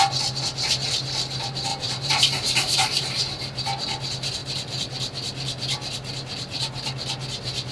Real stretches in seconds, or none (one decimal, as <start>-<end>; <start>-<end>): 0.0-1.7; 3.2-7.7